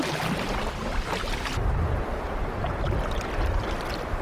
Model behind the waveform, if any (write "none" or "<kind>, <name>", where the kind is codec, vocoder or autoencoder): none